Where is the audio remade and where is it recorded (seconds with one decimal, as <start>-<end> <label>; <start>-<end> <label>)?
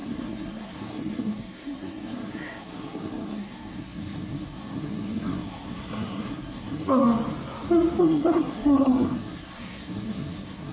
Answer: 0.0-7.0 remade; 7.0-8.0 recorded; 8.0-10.7 remade